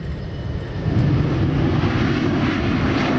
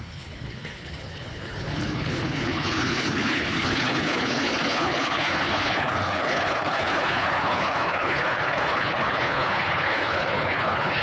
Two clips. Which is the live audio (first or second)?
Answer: first